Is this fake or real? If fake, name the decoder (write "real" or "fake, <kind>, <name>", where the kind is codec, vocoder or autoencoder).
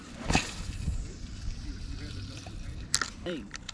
fake, vocoder, BigVGAN v2